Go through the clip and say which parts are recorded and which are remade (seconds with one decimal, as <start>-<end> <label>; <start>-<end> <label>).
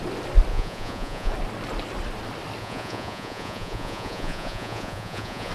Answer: 0.0-0.5 recorded; 0.5-1.3 remade; 1.3-2.6 recorded; 2.6-5.5 remade